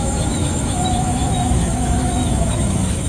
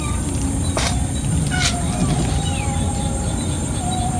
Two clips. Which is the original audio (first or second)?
second